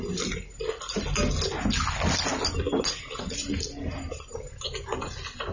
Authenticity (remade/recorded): recorded